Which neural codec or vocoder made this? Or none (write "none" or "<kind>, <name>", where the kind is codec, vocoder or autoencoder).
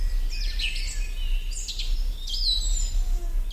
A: none